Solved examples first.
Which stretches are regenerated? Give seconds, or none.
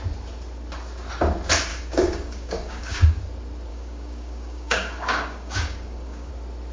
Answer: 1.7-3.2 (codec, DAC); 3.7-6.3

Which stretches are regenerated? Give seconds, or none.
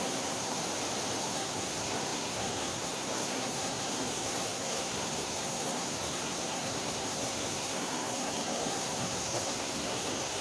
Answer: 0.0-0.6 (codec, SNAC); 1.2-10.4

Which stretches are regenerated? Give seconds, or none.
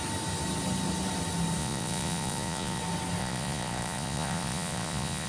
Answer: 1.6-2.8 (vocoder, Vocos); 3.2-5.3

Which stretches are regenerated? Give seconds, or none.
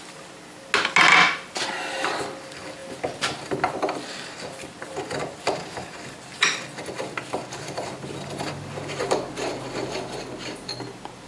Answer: none